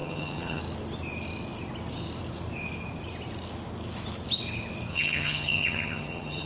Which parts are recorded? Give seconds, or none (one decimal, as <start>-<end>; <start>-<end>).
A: 0.6-4.9